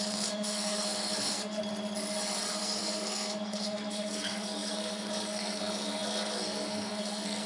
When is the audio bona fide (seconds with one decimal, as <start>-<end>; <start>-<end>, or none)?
1.6-2.5